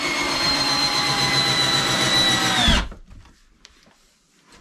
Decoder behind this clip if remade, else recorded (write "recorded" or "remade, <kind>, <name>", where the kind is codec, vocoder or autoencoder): remade, vocoder, BigVGAN v2